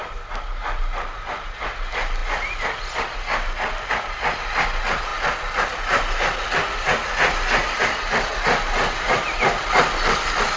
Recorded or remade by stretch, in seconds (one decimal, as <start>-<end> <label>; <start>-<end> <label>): 0.0-10.6 recorded